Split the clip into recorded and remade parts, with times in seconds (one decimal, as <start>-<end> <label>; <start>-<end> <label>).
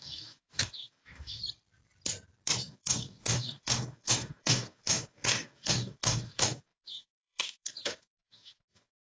0.0-1.4 remade; 1.4-2.6 recorded; 2.6-9.1 remade